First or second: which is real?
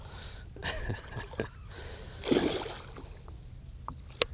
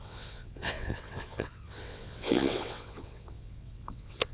first